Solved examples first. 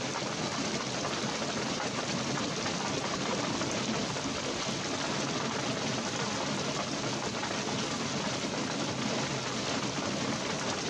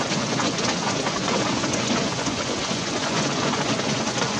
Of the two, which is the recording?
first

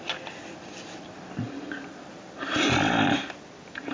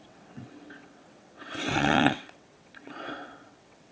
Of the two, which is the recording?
first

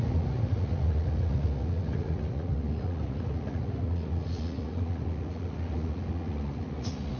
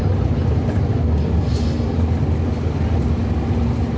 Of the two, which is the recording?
second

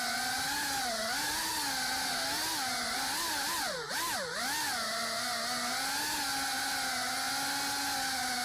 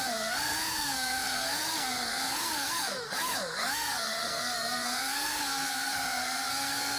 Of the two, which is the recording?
first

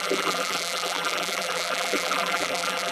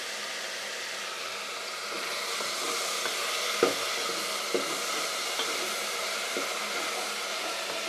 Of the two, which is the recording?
second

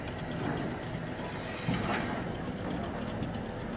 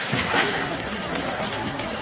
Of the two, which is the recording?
first